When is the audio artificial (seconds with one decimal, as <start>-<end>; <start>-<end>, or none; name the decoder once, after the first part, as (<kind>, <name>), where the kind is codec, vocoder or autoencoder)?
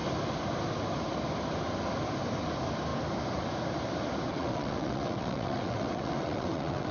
4.3-6.9 (vocoder, WaveNeXt)